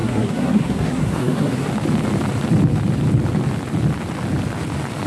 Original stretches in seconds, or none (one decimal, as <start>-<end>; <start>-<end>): 1.7-5.1